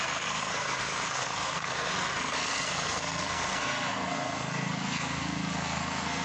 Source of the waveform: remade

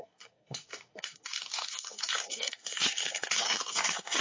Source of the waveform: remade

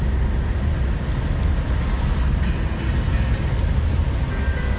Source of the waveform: recorded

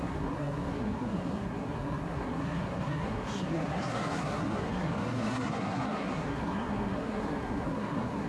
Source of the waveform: remade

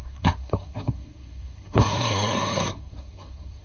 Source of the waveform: remade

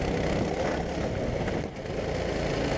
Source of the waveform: recorded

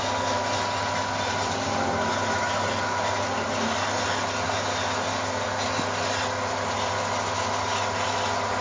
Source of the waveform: recorded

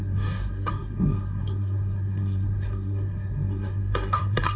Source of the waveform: remade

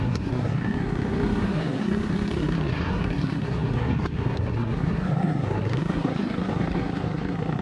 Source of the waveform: remade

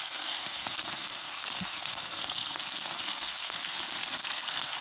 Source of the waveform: remade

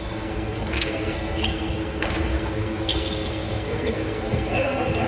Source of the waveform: remade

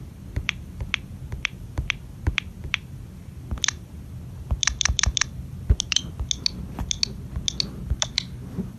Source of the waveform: recorded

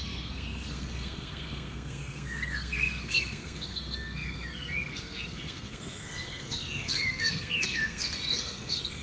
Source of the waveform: remade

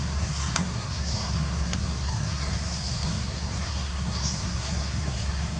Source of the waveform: remade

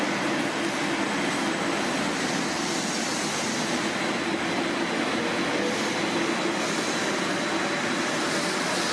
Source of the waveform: recorded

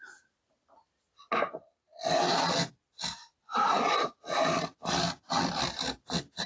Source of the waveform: recorded